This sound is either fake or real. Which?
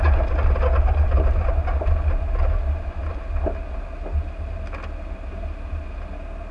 real